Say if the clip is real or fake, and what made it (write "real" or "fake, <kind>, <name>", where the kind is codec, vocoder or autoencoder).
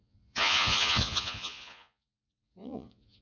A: fake, vocoder, Vocos